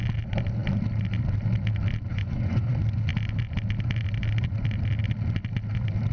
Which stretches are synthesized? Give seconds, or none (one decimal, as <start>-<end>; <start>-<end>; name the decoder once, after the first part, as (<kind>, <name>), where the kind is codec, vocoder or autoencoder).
2.1-2.7 (vocoder, Vocos)